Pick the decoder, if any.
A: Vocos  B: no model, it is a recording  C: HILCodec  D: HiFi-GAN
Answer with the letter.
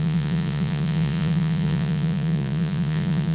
A